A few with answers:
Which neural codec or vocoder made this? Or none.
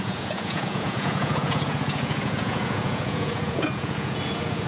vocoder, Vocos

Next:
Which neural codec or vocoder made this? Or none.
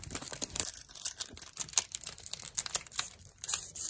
vocoder, BigVGAN v2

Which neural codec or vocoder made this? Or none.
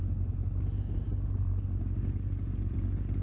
none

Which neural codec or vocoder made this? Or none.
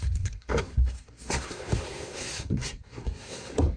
codec, SNAC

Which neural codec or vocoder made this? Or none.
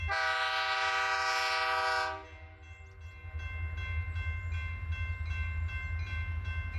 none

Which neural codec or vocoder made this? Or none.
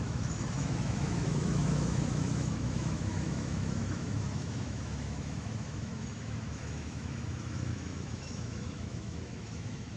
autoencoder, DAC-VAE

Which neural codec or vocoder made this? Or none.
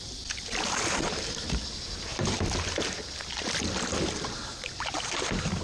none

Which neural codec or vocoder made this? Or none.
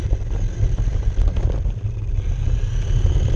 none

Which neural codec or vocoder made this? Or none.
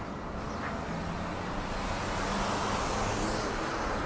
none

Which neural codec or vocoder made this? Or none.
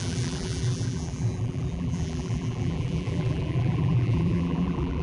vocoder, BigVGAN v2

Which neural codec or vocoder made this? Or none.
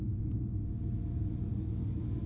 none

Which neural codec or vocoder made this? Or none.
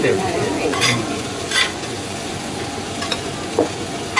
vocoder, Vocos